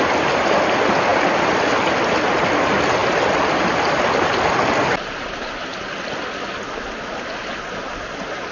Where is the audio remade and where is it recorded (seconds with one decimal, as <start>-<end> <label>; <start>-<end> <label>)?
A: 0.0-8.5 recorded

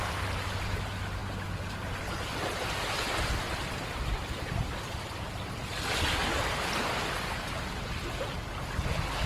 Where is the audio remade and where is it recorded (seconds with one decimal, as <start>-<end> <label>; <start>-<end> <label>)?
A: 0.0-9.3 recorded